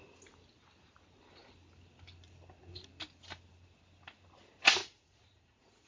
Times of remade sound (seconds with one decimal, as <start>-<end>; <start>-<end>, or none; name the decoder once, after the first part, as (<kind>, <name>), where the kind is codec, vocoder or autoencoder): 4.8-5.9 (vocoder, Vocos)